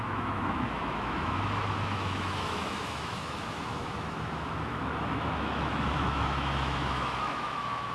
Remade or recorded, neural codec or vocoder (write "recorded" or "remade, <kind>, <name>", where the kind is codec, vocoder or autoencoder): remade, autoencoder, DAC-VAE